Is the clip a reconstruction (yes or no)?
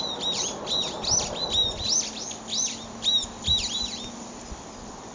no